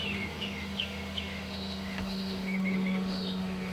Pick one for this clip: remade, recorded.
remade